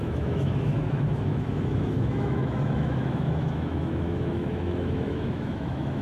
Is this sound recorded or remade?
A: remade